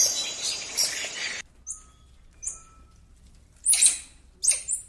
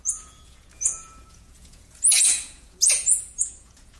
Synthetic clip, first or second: second